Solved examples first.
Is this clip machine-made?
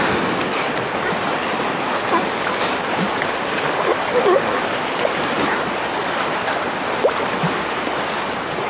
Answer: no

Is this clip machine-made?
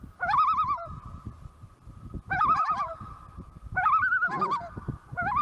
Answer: yes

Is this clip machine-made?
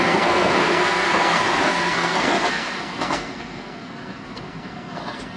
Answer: yes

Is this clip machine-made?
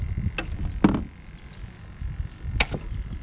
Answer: no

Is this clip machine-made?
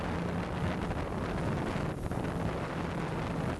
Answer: no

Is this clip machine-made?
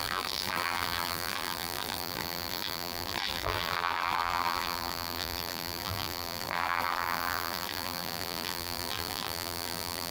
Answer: yes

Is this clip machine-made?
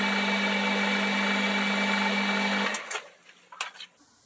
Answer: no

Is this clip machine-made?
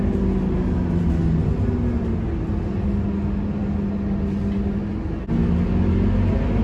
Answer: no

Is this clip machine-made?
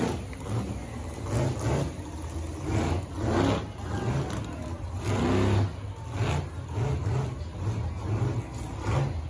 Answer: no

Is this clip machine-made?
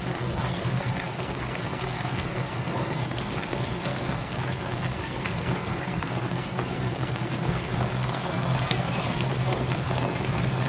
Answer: yes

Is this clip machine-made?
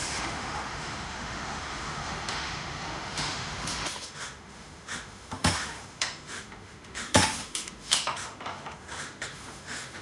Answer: yes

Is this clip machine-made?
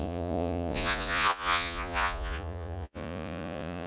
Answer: yes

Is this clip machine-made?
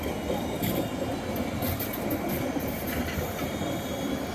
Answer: no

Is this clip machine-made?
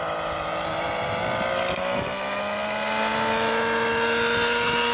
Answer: no